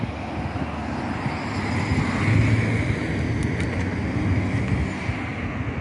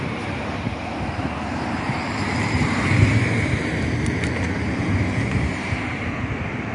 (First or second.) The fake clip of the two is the second